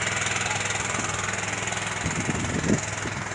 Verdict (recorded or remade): recorded